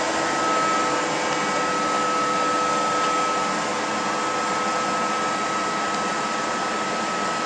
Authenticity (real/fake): real